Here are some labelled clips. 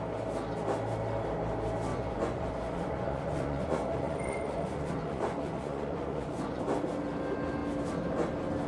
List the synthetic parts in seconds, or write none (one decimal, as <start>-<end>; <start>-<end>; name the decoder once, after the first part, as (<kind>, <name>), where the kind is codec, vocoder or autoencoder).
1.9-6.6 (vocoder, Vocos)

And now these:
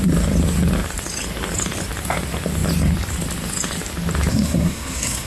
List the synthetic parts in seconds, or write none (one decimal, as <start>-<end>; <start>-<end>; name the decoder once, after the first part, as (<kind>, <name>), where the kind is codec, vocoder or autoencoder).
4.3-5.3 (codec, SNAC)

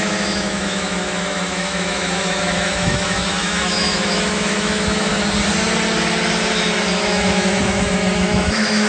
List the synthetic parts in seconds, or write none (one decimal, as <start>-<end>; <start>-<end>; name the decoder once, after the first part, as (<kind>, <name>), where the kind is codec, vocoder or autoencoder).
0.0-5.1 (autoencoder, DAC-VAE); 7.0-8.9

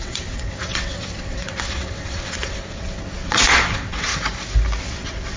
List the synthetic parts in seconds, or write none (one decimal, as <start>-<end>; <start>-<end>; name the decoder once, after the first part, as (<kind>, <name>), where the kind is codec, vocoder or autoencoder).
0.0-4.1 (vocoder, WaveNeXt); 4.8-5.4

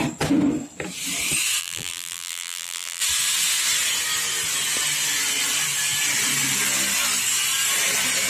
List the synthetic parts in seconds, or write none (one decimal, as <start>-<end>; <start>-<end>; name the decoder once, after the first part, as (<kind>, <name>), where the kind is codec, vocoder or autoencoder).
1.6-3.0 (vocoder, BigVGAN v2)

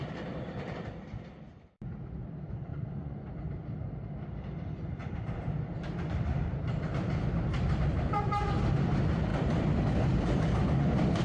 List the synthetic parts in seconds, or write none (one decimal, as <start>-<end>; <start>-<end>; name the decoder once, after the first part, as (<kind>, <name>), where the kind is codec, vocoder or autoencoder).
2.7-3.3 (vocoder, Vocos)

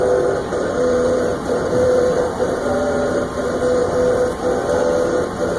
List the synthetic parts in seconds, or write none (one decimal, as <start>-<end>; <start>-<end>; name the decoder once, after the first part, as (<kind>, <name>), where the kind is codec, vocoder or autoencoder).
0.5-3.4 (vocoder, BigVGAN v2)

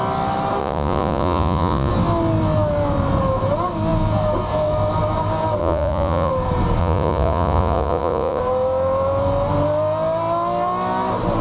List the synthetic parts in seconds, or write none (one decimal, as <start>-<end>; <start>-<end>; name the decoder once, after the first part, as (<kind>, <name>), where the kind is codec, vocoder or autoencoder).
0.6-1.9 (vocoder, Vocos); 5.6-6.3; 6.8-8.4